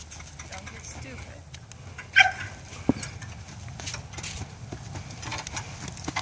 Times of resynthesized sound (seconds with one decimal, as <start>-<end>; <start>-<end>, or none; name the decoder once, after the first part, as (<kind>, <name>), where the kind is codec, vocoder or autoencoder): none